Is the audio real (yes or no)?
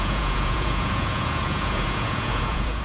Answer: no